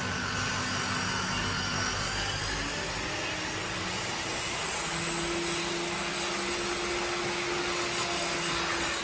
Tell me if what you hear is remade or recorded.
recorded